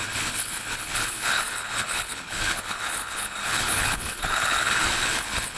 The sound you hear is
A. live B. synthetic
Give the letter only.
B